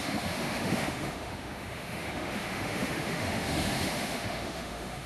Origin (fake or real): fake